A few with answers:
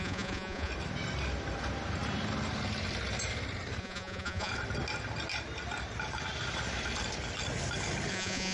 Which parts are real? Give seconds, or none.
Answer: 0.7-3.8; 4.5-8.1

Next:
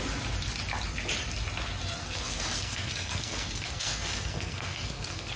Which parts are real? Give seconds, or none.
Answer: 0.0-2.0